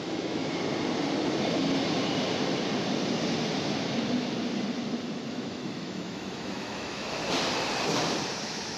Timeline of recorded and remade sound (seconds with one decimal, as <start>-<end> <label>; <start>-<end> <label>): 0.0-0.4 remade; 0.4-5.3 recorded; 5.3-7.2 remade; 7.2-8.4 recorded; 8.4-8.8 remade